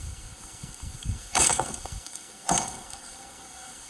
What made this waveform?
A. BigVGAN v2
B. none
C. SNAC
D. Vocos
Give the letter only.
C